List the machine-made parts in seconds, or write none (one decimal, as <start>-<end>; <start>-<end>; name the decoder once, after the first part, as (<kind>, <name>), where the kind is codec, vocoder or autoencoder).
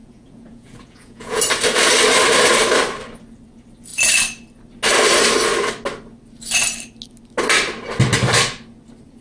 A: 0.0-1.4 (vocoder, Vocos)